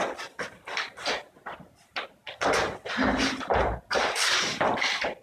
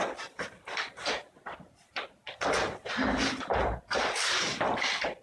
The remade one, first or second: second